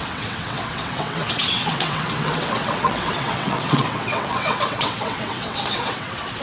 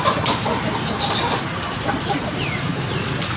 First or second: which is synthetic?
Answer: first